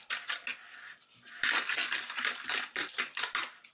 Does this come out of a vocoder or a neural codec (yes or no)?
no